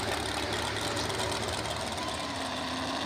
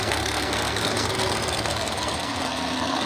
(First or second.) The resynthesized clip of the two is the second